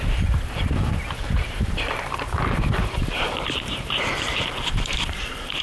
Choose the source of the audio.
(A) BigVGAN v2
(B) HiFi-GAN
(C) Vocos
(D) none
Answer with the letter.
A